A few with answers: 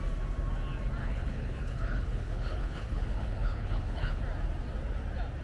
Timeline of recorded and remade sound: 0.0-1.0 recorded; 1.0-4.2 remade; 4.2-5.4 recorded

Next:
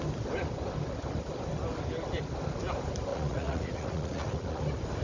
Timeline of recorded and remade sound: 0.0-3.1 recorded; 3.1-4.6 remade; 4.6-5.0 recorded

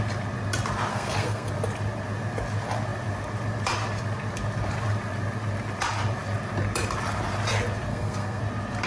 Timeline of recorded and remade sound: 0.0-0.9 recorded; 0.9-1.5 remade; 1.5-7.9 recorded; 7.9-8.4 remade; 8.4-8.9 recorded